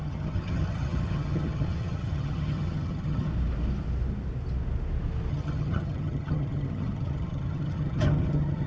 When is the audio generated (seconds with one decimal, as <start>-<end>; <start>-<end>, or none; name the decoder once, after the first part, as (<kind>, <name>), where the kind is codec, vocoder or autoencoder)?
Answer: 0.0-3.3 (vocoder, HiFi-GAN); 5.3-8.7